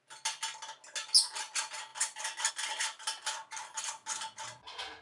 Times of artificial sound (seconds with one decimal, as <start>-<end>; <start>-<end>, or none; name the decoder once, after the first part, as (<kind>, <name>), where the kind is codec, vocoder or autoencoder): none